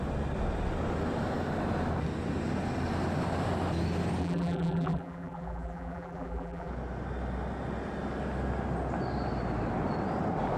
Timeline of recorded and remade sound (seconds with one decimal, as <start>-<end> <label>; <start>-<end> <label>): 0.0-4.2 recorded; 4.2-6.7 remade; 6.7-10.6 recorded